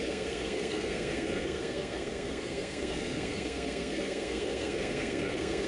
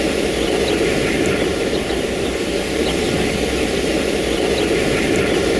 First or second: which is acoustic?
second